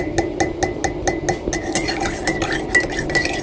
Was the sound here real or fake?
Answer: real